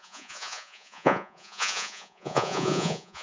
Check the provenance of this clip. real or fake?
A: fake